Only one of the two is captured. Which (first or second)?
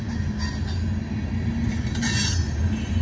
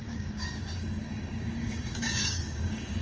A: first